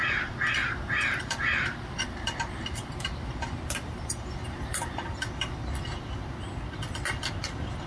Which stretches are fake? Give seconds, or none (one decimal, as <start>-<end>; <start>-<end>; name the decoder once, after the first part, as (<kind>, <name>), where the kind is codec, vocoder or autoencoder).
0.6-5.3 (vocoder, BigVGAN v2)